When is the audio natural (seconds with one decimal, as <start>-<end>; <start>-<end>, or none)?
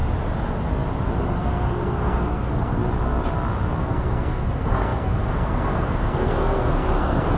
0.0-1.4; 2.8-3.8